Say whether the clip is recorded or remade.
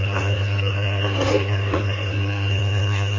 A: remade